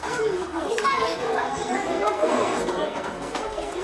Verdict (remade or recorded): remade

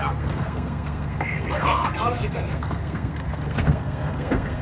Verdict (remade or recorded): remade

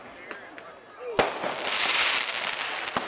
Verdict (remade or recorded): recorded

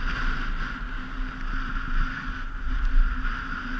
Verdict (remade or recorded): recorded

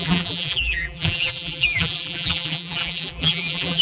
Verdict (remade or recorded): remade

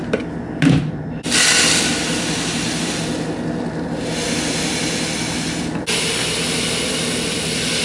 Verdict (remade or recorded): recorded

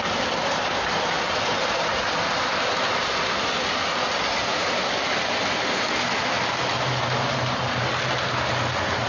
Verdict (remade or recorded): recorded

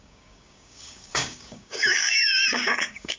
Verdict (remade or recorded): remade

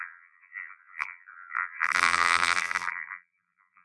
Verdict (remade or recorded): remade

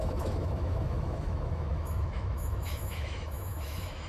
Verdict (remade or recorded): remade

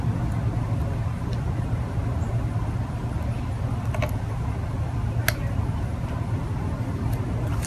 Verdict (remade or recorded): recorded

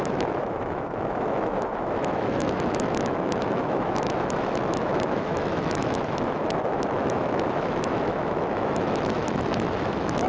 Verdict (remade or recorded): remade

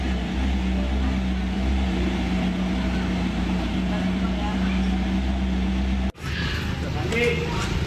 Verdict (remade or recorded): recorded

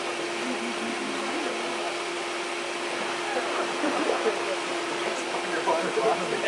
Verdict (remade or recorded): recorded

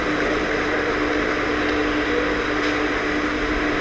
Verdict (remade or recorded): recorded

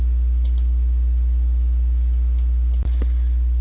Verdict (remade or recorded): recorded